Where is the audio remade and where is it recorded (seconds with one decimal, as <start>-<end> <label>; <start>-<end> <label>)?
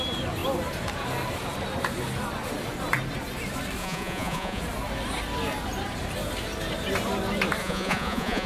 0.0-3.8 recorded; 3.8-4.6 remade; 4.6-7.6 recorded; 7.6-8.5 remade